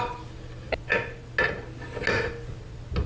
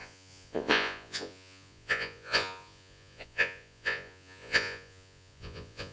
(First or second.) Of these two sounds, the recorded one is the first